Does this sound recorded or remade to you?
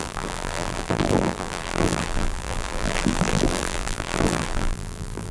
remade